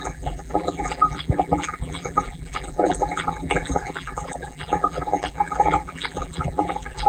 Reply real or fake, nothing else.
fake